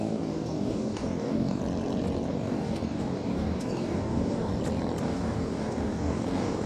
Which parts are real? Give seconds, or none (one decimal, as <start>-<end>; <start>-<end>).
1.6-2.3; 4.5-5.0